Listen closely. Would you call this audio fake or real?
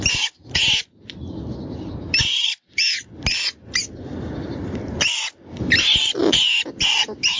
real